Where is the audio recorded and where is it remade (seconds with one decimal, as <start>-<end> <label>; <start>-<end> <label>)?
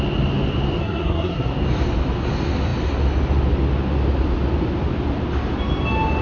0.0-0.8 recorded; 0.8-1.5 remade; 1.5-6.2 recorded